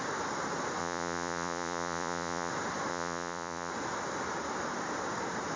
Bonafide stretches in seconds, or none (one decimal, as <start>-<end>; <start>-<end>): 0.0-0.8; 2.5-2.9; 3.7-5.6

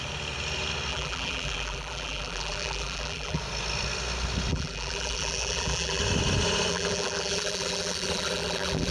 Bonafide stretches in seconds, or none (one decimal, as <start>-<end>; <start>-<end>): 0.0-0.9; 3.4-4.5; 6.0-6.7

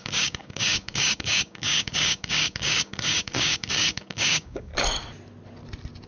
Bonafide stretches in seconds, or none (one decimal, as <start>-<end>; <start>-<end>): 4.7-6.1

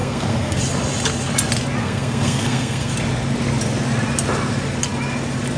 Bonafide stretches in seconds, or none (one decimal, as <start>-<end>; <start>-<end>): 0.6-1.8; 2.9-5.6

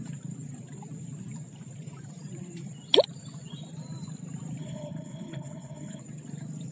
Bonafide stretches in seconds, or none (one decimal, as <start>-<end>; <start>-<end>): 0.0-4.6; 6.0-6.7

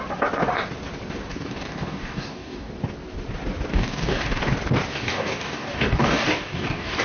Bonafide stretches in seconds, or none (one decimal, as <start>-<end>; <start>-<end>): 0.0-1.3; 2.7-3.7; 4.4-4.9

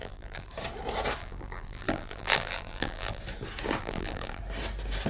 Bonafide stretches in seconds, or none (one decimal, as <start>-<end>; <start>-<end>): 0.5-1.2; 3.2-3.8; 4.4-5.1